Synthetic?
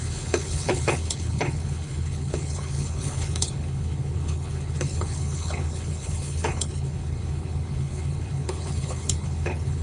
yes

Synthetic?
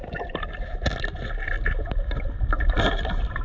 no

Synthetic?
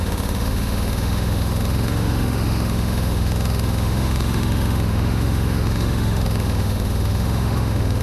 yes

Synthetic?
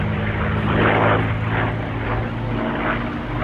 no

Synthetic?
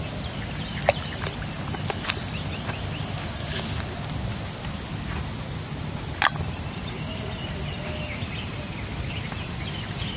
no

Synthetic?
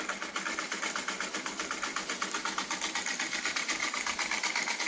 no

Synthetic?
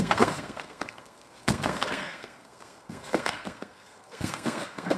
yes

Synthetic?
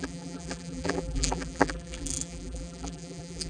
yes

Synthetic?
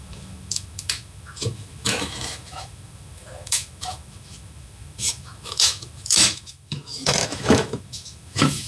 yes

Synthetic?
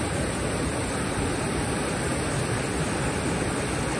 no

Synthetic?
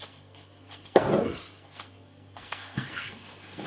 yes